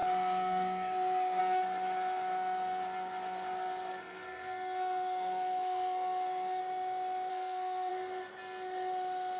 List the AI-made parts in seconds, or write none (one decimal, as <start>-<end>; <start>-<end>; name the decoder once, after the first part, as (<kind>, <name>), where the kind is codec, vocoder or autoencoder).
0.0-1.4 (codec, SNAC); 3.9-6.6; 7.3-7.9